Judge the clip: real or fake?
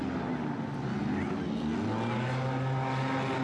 real